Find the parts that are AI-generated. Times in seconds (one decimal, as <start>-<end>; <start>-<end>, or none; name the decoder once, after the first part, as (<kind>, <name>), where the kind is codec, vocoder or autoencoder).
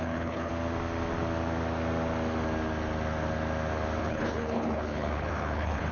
0.0-0.5 (codec, HILCodec); 4.0-5.9